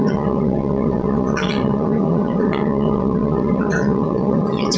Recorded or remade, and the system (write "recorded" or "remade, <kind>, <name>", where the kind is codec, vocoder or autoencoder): remade, vocoder, WaveNeXt